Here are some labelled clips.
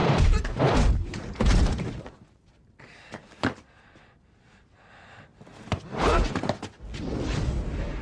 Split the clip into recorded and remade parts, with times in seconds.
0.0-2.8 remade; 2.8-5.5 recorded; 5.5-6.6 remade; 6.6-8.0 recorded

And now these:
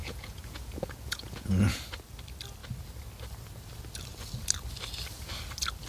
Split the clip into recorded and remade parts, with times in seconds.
0.0-1.8 remade; 1.8-5.9 recorded

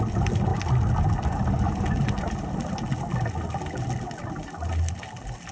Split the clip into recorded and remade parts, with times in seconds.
0.0-5.5 recorded

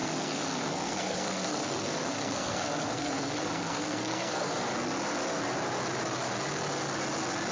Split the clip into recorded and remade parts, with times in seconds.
0.0-4.5 remade; 4.5-7.5 recorded

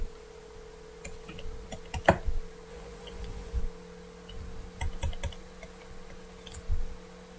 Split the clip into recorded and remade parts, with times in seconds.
0.0-2.7 recorded; 2.7-3.6 remade; 3.6-7.4 recorded

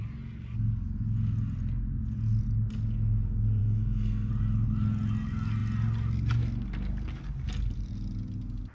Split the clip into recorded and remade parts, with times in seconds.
0.0-3.6 recorded; 3.6-4.3 remade; 4.3-8.7 recorded

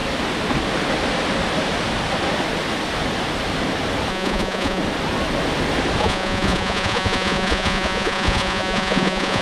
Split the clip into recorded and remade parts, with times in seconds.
0.0-4.1 recorded; 4.1-4.8 remade; 4.8-6.0 recorded; 6.0-9.4 remade

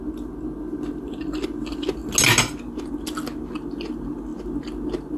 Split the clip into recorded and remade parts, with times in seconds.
0.0-5.2 recorded